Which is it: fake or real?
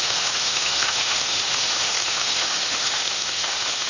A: fake